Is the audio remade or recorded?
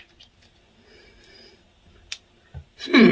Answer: recorded